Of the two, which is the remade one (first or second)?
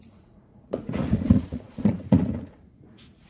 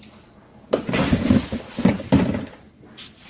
first